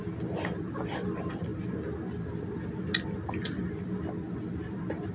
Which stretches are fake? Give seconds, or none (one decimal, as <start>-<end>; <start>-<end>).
none